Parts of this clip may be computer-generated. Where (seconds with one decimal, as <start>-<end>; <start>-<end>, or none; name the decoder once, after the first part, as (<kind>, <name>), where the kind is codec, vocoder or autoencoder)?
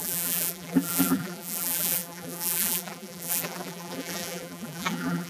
0.0-5.3 (vocoder, BigVGAN v2)